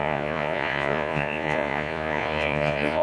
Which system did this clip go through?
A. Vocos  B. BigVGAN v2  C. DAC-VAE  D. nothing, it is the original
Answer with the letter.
A